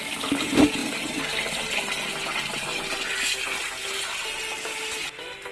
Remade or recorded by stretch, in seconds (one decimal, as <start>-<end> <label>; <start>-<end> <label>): 0.0-5.5 recorded